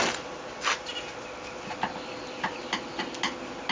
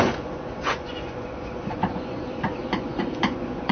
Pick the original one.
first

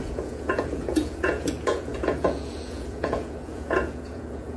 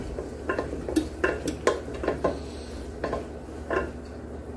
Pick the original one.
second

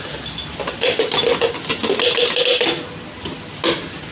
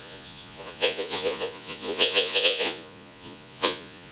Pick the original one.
first